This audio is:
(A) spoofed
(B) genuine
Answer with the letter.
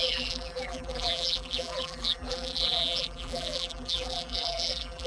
A